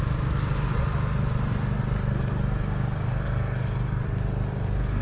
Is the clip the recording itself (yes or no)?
yes